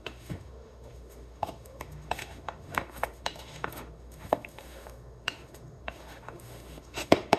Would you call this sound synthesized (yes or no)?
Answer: yes